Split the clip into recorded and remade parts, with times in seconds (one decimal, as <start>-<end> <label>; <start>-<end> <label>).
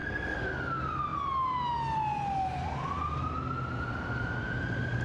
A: 0.0-0.5 remade; 0.5-5.0 recorded